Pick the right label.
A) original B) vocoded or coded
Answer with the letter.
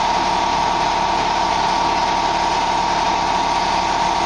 A